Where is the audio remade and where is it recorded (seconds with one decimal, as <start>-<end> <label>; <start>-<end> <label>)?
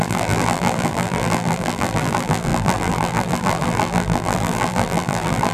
0.0-5.5 remade